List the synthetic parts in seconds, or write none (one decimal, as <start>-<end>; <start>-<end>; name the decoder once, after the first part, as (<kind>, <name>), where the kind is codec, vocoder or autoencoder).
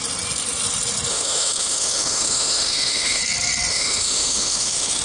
1.1-3.2 (autoencoder, DAC-VAE); 3.7-5.0